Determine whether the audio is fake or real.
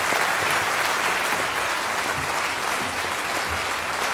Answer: real